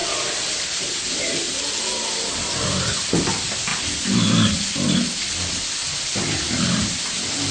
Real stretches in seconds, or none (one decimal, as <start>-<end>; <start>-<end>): 0.0-7.5